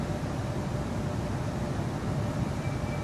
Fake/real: real